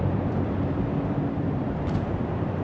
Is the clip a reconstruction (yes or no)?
yes